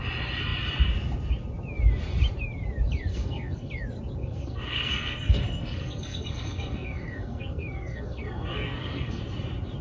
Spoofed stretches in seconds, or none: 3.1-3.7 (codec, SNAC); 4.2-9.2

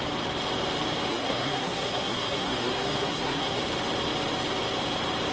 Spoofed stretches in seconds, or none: 1.1-3.6 (codec, SNAC)